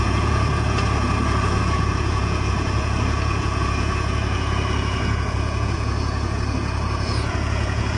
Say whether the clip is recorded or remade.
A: remade